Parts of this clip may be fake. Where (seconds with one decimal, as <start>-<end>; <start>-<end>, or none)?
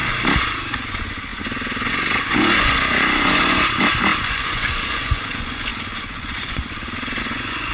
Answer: 0.7-7.7